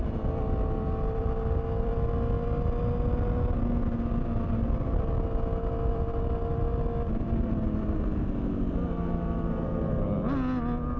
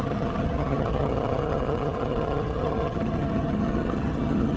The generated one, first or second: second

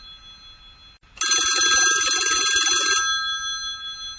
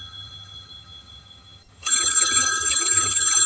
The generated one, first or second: second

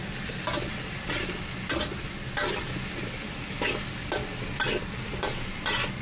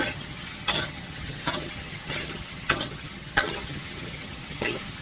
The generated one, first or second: second